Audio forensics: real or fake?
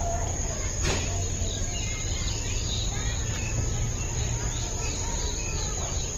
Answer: real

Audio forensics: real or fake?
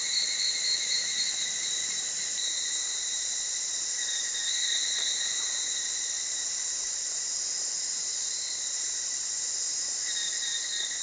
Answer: fake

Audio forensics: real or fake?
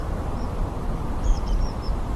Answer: fake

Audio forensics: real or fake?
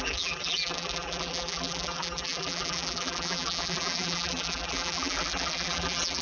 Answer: fake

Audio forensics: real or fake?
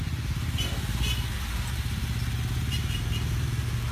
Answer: real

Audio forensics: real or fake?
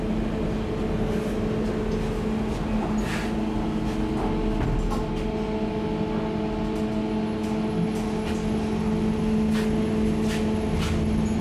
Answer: real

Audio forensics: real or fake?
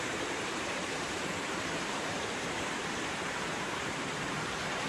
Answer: fake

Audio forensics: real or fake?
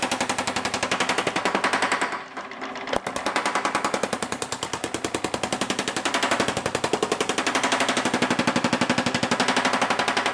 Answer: real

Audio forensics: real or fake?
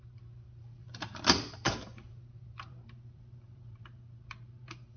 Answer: fake